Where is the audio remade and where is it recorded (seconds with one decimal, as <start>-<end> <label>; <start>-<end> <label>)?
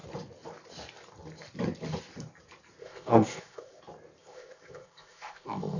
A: 0.0-2.8 recorded; 2.8-3.8 remade; 3.8-4.2 recorded; 4.2-5.8 remade